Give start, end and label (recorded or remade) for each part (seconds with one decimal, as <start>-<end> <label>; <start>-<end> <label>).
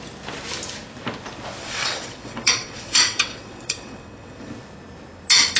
0.0-1.6 recorded; 1.6-4.5 remade; 4.5-5.6 recorded